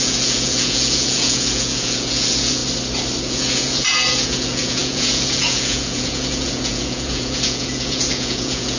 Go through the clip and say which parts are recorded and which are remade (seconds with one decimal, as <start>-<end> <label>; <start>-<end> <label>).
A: 0.0-2.6 remade; 2.6-3.2 recorded; 3.2-8.8 remade